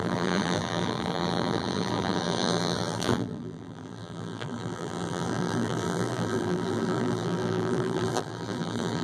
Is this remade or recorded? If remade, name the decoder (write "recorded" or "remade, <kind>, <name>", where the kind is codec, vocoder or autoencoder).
remade, vocoder, BigVGAN v2